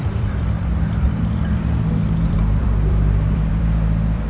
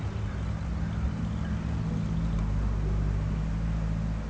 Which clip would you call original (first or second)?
second